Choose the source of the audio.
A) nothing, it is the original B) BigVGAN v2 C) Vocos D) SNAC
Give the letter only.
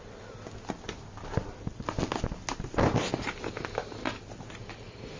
A